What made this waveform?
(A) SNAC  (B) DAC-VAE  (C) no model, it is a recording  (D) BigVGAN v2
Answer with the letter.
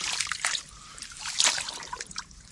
D